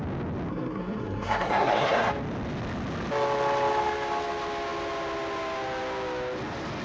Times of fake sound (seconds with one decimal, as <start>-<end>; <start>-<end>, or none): 0.5-2.1